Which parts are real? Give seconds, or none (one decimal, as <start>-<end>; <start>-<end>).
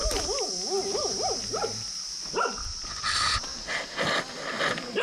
0.0-3.0; 3.5-5.0